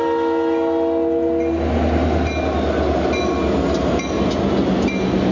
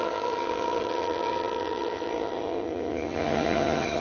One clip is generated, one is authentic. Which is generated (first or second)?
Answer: second